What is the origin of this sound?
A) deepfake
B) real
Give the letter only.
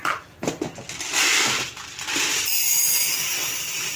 B